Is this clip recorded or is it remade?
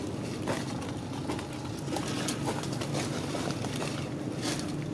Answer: recorded